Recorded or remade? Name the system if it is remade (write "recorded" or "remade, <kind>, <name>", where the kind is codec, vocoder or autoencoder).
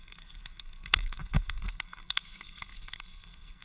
remade, codec, SNAC